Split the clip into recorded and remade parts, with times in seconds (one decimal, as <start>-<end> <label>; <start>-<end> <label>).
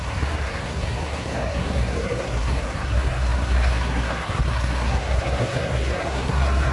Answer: 0.0-6.7 remade